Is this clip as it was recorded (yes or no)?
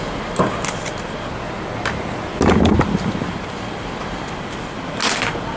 yes